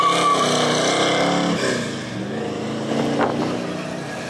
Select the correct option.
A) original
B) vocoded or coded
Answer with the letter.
A